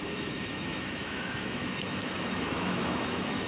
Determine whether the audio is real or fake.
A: fake